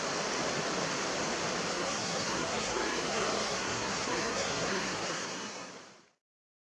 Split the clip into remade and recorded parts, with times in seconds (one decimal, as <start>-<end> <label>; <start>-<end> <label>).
0.0-1.7 recorded; 1.7-5.7 remade; 5.7-6.7 recorded